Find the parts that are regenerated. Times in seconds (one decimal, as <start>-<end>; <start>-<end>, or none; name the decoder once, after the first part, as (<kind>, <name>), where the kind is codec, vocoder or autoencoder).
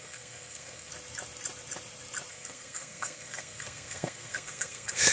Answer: 0.0-0.9 (codec, SNAC); 2.3-5.1